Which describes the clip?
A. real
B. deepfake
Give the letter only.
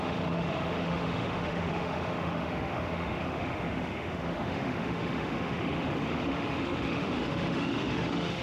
B